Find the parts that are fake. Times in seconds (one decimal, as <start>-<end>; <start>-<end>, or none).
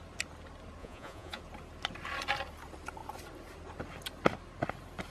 0.8-1.4